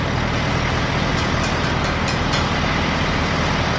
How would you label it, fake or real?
real